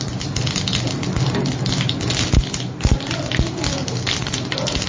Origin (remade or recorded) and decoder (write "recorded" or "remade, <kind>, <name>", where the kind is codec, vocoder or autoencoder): recorded